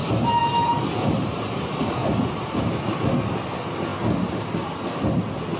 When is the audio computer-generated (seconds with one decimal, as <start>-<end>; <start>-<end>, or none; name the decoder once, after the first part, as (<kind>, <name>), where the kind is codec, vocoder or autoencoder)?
none